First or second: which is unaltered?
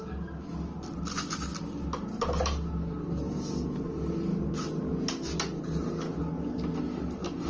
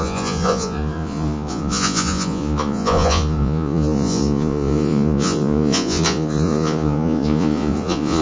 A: first